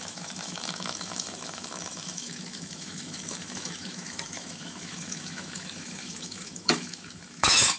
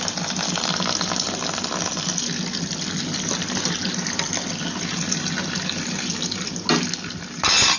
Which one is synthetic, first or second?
first